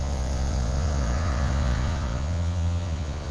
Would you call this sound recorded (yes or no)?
no